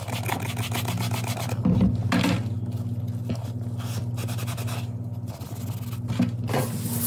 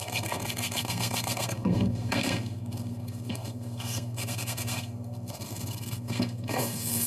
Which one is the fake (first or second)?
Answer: second